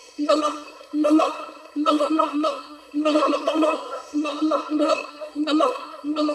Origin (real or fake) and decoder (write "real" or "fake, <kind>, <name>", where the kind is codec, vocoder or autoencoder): fake, codec, SNAC